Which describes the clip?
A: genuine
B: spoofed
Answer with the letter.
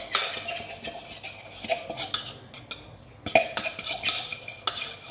A